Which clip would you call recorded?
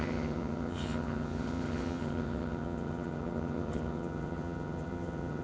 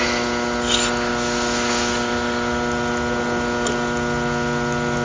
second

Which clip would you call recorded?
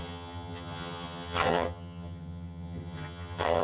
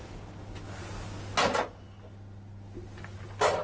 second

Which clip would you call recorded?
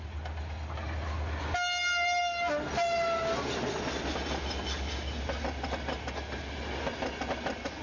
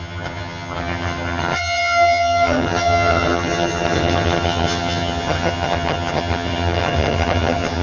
first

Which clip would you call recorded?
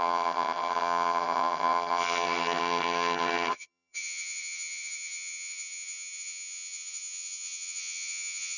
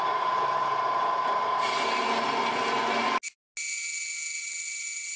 second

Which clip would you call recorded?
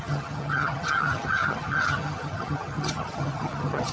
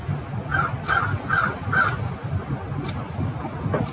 second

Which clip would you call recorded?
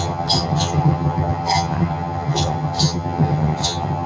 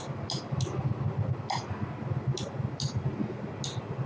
second